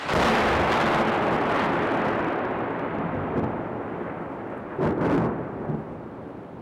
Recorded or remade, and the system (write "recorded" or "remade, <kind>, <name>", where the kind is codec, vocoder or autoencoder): recorded